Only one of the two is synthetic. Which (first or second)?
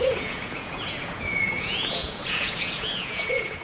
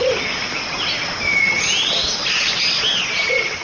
first